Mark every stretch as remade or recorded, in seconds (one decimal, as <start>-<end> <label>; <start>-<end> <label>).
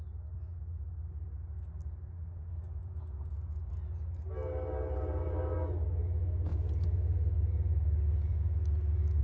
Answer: 0.0-2.8 recorded; 2.8-3.7 remade; 3.7-9.2 recorded